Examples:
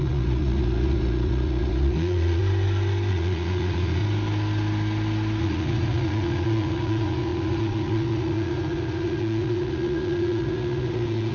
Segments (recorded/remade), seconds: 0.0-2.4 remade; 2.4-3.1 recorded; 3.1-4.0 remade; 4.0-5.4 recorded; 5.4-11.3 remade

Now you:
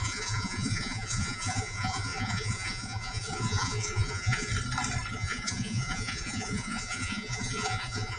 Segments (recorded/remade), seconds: 0.0-4.5 remade; 4.5-5.1 recorded; 5.1-8.2 remade